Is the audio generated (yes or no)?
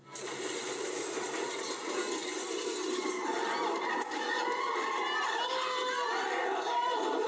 no